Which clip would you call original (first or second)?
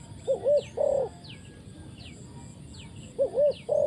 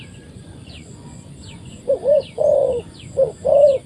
first